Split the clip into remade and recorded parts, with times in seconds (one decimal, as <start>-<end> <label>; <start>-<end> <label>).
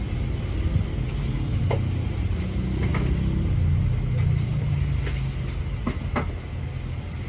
0.0-7.3 recorded